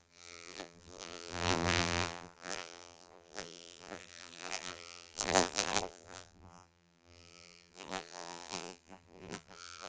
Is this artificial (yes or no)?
yes